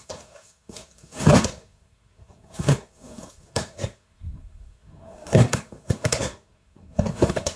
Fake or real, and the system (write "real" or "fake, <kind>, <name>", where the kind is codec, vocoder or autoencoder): fake, codec, SNAC